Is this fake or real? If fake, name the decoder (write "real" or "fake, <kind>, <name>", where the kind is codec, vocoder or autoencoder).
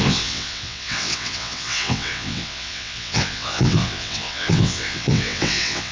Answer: fake, vocoder, WaveNeXt